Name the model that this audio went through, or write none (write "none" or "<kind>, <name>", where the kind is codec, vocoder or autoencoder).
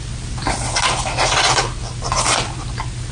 none